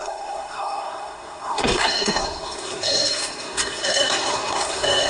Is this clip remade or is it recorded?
remade